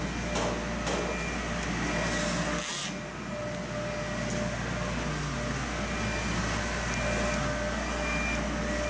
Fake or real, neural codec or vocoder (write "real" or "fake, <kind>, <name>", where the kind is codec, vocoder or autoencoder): real